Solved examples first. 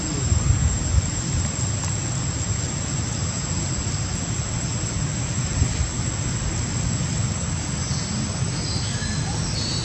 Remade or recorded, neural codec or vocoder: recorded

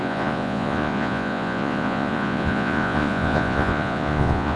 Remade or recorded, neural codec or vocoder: remade, vocoder, Vocos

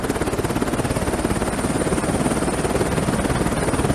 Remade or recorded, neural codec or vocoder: recorded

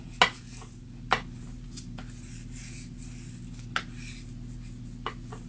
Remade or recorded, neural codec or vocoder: recorded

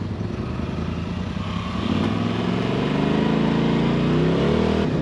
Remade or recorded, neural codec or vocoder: recorded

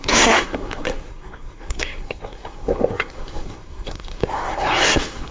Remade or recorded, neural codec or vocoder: remade, codec, SNAC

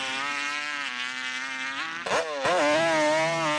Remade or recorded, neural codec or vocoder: recorded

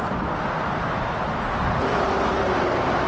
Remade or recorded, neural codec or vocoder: recorded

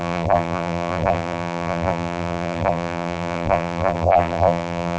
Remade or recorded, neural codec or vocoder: remade, vocoder, BigVGAN v2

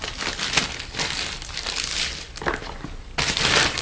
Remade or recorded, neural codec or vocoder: recorded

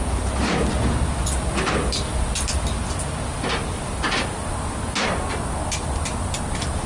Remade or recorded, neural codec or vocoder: recorded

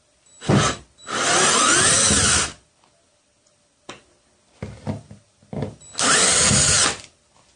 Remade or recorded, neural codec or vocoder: recorded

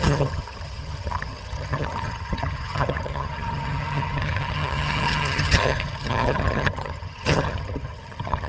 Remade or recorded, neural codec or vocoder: remade, vocoder, HiFi-GAN